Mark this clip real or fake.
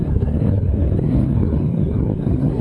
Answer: fake